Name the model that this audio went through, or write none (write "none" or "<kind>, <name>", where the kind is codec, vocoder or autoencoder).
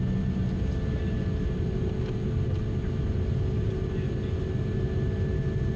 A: none